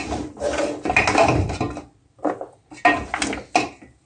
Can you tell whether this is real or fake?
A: real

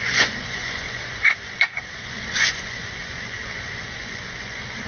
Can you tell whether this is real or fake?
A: fake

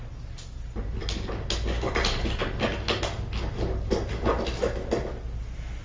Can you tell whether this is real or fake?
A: real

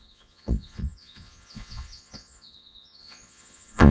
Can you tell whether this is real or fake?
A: fake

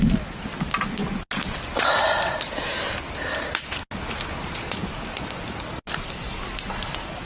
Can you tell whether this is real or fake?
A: real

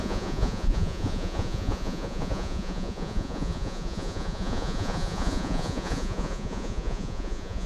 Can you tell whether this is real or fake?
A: fake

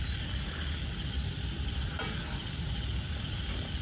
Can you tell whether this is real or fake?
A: real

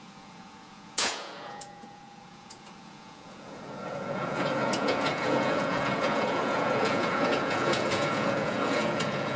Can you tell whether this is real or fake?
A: fake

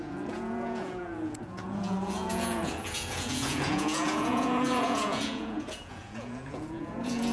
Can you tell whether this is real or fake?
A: fake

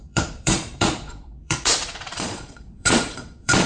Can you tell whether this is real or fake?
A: fake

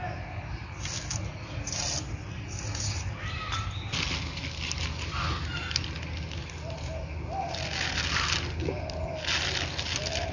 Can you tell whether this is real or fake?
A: real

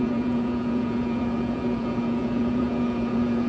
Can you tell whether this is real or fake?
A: fake